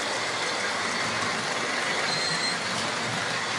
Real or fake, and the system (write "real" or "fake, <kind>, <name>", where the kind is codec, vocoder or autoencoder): real